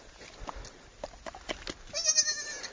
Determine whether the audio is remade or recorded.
recorded